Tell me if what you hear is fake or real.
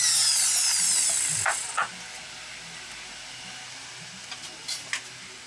real